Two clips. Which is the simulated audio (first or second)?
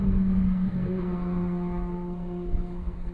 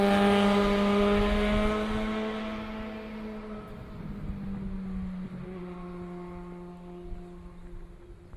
first